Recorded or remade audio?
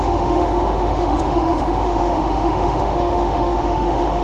remade